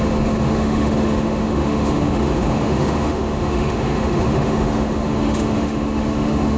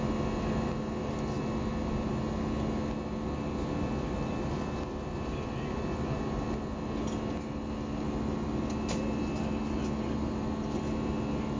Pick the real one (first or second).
second